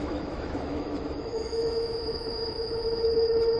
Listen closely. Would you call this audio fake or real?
fake